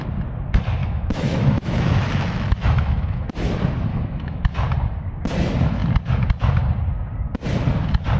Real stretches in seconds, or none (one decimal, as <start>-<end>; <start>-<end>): 0.0-0.8; 3.3-3.9; 4.4-8.2

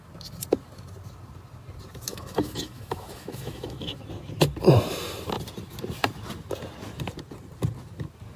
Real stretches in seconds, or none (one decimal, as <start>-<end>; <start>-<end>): 0.0-2.1; 4.0-8.4

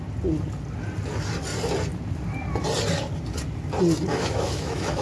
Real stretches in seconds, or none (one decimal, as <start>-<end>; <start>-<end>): 0.0-4.1

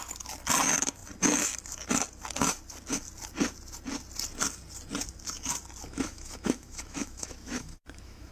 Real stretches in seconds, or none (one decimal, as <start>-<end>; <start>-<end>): 0.0-5.8